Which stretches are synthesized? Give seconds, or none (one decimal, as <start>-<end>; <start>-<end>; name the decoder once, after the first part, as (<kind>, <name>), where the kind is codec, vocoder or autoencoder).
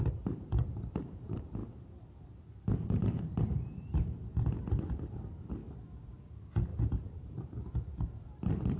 0.0-5.6 (vocoder, BigVGAN v2); 6.3-8.8